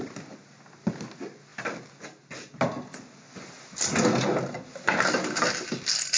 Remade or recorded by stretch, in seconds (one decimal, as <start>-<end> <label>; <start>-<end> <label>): 0.0-6.2 recorded